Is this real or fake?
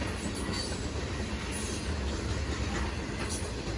real